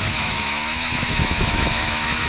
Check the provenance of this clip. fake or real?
fake